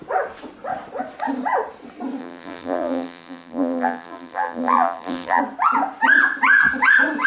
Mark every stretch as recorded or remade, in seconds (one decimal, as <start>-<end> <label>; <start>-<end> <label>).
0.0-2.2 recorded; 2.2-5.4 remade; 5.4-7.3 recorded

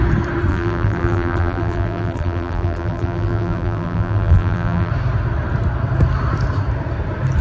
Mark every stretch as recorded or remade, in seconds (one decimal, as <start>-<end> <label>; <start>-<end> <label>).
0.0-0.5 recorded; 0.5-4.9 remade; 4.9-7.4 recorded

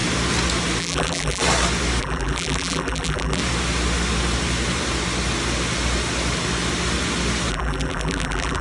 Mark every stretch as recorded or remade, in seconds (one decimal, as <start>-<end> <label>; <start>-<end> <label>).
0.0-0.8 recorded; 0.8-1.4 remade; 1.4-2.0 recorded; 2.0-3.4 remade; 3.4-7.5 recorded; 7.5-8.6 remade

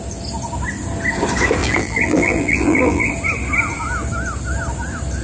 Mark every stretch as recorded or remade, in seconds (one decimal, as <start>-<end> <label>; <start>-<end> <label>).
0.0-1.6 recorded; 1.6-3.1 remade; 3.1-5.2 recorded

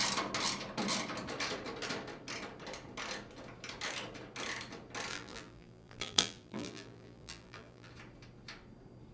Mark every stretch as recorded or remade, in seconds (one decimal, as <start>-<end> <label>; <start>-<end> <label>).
0.0-5.1 recorded; 5.1-7.9 remade; 7.9-9.1 recorded